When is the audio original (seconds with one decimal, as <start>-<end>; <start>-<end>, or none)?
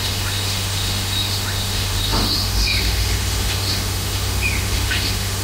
none